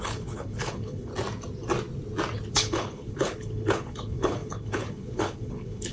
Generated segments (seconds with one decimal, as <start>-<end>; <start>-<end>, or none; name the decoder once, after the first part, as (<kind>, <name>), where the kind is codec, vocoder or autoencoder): 0.0-1.1 (codec, HILCodec); 2.5-5.9

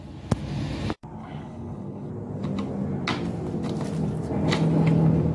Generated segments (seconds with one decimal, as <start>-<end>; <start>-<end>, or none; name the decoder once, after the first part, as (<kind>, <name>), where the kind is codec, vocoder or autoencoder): 1.2-2.1 (codec, HILCodec)